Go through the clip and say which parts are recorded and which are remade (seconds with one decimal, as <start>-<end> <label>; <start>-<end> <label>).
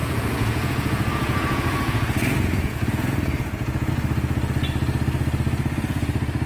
0.0-3.9 remade; 3.9-6.5 recorded